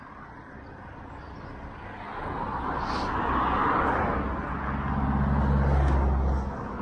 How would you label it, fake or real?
real